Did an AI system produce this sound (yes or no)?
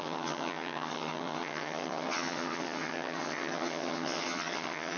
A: yes